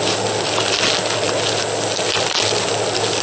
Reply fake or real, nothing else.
real